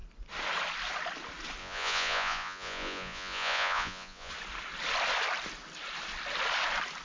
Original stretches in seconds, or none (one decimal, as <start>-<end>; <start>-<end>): 0.0-1.6; 4.3-7.0